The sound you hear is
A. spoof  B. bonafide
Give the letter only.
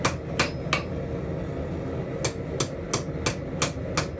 B